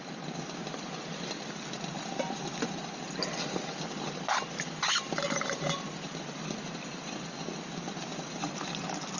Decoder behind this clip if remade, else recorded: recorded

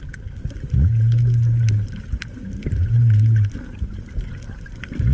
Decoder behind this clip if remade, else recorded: recorded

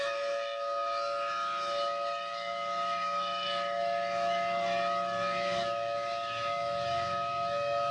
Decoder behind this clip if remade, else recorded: remade, autoencoder, DAC-VAE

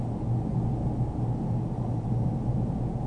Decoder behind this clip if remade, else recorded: recorded